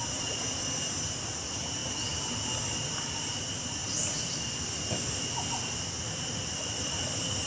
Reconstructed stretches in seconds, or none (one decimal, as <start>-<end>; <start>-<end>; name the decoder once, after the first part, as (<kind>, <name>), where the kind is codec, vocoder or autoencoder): none